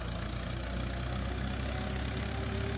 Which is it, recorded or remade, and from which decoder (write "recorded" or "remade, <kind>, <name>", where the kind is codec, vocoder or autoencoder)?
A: recorded